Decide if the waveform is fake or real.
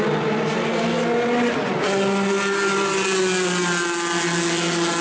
real